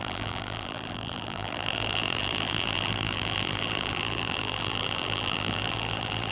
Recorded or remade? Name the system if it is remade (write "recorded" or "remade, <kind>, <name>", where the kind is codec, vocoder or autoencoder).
remade, vocoder, BigVGAN v2